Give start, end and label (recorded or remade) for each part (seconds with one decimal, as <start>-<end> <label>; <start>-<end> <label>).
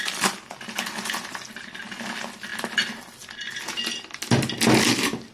0.0-5.3 recorded